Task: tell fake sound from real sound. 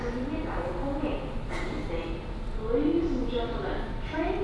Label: real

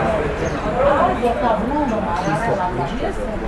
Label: fake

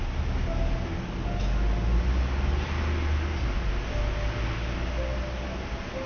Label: real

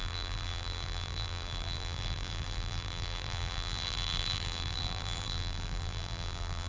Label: fake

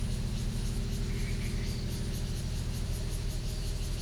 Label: real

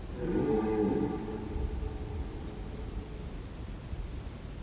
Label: real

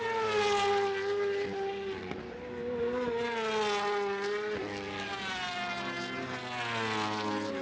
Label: real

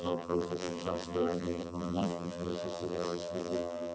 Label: fake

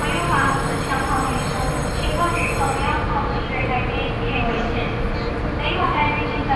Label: real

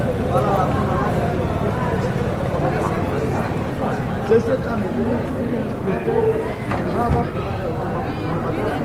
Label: real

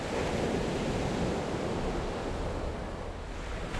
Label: real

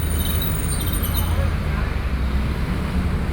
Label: real